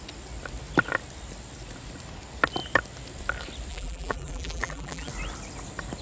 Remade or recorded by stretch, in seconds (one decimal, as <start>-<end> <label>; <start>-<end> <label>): 0.0-3.7 recorded; 3.7-5.1 remade; 5.1-6.0 recorded